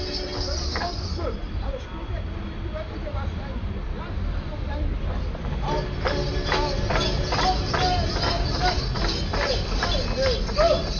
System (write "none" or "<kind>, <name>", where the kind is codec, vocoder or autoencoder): none